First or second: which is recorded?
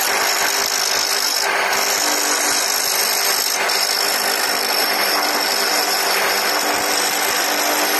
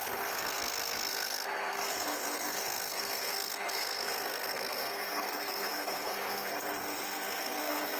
first